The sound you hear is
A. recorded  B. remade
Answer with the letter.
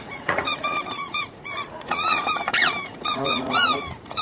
B